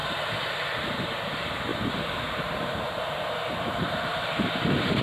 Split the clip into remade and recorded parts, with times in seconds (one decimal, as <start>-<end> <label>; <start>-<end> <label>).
0.0-0.7 remade; 0.7-1.7 recorded; 1.7-5.0 remade